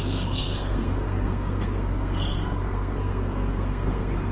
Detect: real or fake fake